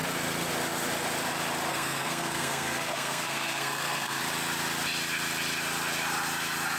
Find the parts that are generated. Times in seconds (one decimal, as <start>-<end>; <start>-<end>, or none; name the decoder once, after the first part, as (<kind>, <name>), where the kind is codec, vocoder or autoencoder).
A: 1.7-4.2 (codec, SNAC)